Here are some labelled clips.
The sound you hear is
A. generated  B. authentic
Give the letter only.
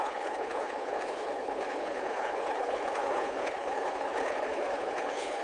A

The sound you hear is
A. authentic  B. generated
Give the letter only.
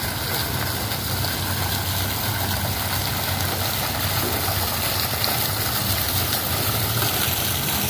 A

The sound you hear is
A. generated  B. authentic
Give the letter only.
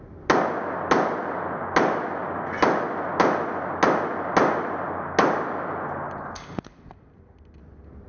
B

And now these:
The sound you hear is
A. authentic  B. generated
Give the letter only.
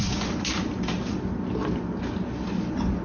A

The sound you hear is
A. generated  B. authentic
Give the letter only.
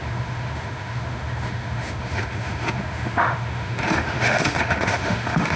A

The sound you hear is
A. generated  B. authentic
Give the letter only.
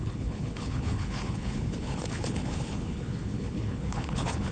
A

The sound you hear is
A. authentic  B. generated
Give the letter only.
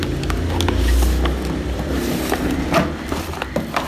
A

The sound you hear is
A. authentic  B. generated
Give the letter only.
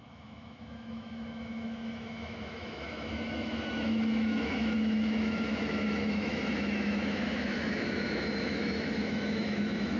B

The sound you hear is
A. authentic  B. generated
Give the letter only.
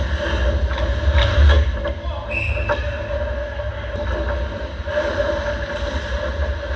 A